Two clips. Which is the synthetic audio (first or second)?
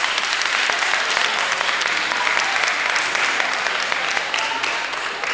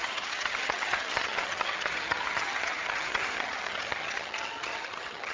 second